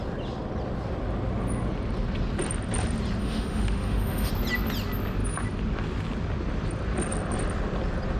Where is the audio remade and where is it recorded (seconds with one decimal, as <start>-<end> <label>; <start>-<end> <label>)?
0.0-3.2 recorded; 3.2-4.3 remade; 4.3-8.2 recorded